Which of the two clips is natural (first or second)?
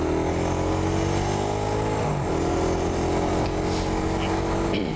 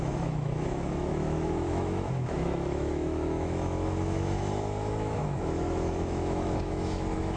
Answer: first